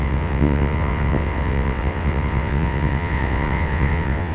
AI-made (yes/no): yes